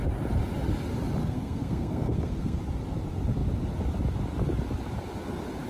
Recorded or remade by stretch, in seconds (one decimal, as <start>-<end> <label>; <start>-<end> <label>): 0.0-1.2 recorded; 1.2-2.6 remade; 2.6-5.7 recorded